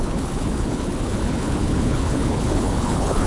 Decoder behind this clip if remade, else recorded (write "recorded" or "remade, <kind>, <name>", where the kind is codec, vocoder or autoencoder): remade, codec, HILCodec